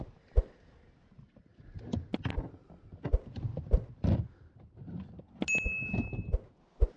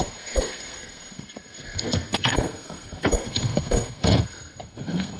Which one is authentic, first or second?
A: first